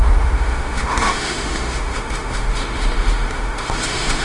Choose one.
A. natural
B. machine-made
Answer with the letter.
B